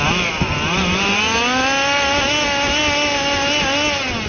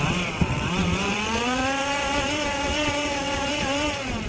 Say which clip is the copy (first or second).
second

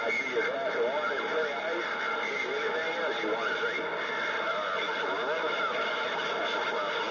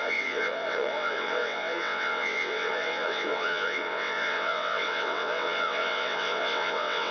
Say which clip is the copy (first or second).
second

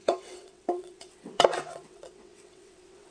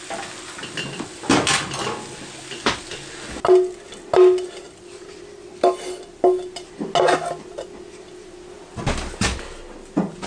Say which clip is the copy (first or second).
first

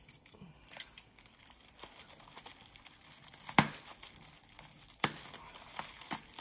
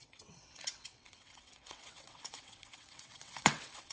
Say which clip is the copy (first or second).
second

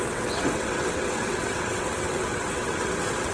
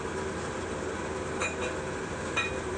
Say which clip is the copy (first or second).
first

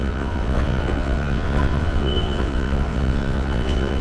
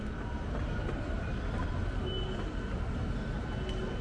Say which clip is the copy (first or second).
first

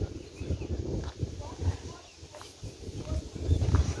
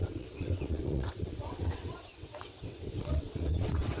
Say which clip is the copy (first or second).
second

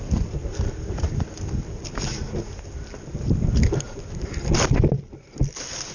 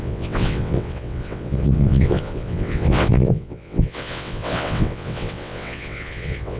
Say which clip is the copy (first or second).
second